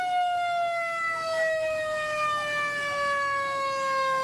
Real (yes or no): no